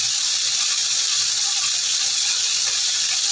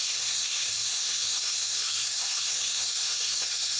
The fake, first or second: second